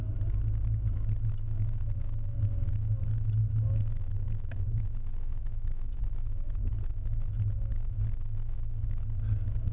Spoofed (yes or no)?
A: no